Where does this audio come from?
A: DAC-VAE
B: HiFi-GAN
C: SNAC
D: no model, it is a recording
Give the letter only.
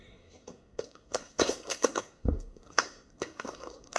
C